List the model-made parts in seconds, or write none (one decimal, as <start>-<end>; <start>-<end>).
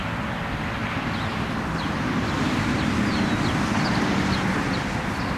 none